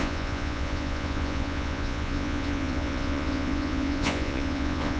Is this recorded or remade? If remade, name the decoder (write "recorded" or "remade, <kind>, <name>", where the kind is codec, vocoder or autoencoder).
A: remade, vocoder, Vocos